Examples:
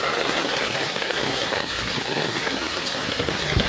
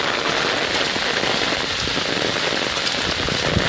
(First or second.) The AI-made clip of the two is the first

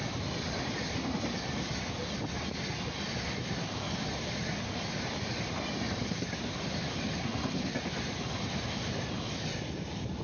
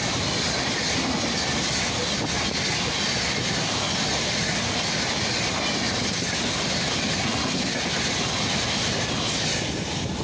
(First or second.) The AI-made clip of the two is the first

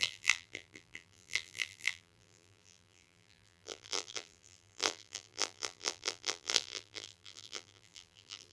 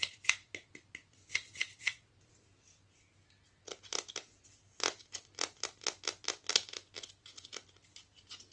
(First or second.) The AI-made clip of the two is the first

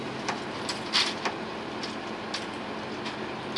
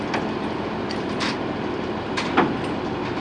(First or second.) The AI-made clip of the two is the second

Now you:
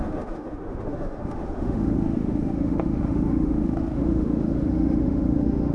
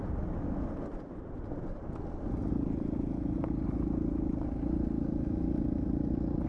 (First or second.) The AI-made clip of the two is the first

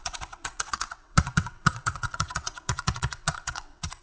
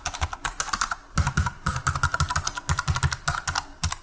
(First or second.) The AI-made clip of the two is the first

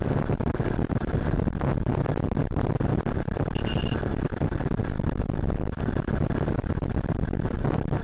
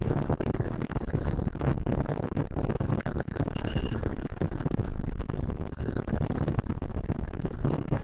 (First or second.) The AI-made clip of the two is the second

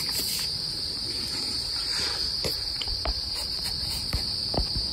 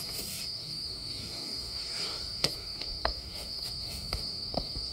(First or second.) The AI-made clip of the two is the second